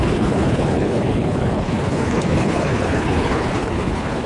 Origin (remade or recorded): remade